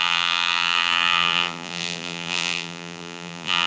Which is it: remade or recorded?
remade